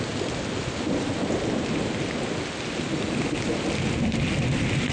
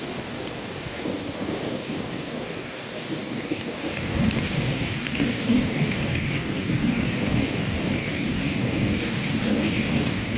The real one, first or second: first